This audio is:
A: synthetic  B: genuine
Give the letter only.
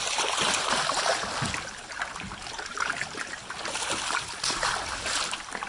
B